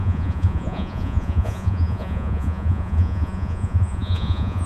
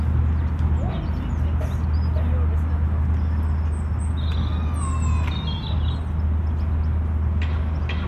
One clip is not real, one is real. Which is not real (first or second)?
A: first